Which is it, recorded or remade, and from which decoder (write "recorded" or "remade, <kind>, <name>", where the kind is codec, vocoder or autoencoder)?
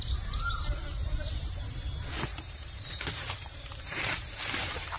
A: remade, vocoder, BigVGAN v2